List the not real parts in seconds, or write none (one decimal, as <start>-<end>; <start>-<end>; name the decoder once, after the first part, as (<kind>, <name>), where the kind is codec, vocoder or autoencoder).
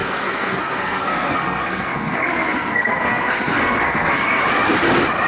0.0-4.4 (codec, SNAC)